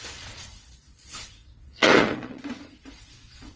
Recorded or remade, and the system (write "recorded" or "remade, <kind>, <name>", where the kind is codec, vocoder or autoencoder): remade, vocoder, Vocos